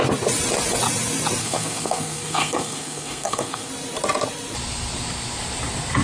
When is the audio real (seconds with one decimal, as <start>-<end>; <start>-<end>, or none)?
0.0-1.4; 3.7-6.0